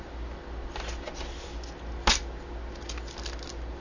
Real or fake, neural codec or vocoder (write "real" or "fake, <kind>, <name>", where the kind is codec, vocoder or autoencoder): real